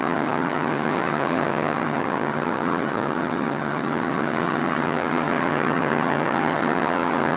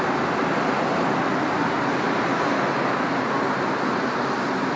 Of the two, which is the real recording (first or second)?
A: second